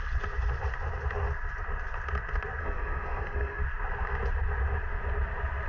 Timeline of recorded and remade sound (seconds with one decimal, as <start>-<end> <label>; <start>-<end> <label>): 0.0-2.6 recorded; 2.6-3.6 remade; 3.6-5.7 recorded